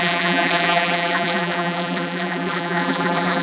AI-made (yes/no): yes